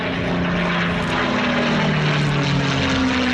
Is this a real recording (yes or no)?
yes